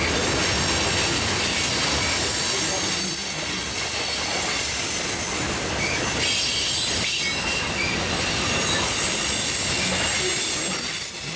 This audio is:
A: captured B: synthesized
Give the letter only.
A